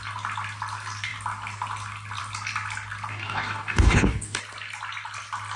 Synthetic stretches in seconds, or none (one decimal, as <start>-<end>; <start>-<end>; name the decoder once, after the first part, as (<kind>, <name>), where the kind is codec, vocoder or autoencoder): 3.1-4.4 (codec, DAC)